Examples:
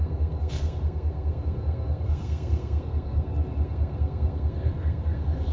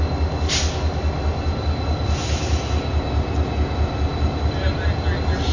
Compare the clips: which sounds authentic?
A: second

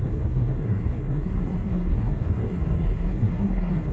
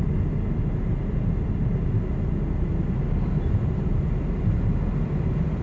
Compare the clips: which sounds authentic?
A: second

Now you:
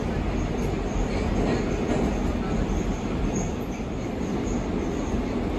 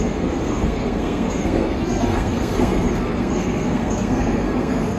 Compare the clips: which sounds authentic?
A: first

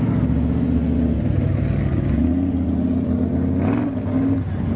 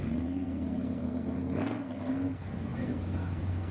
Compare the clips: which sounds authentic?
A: first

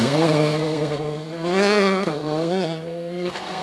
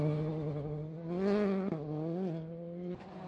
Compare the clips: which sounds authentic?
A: second